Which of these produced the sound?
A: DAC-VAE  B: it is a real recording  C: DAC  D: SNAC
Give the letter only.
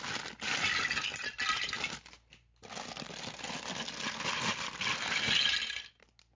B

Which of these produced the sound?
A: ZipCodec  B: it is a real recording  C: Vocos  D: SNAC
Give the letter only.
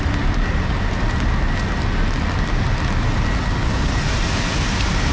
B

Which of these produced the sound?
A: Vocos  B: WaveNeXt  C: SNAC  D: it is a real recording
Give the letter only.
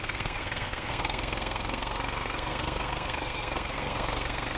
C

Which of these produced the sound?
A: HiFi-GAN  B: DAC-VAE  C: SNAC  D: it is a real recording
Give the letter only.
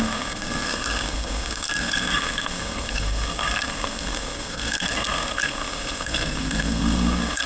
C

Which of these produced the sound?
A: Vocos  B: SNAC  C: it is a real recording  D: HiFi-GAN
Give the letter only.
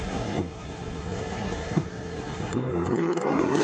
B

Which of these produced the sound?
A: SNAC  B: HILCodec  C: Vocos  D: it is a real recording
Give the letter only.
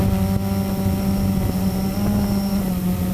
D